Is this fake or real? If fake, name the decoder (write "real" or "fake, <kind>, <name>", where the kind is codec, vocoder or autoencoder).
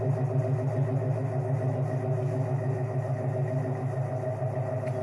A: real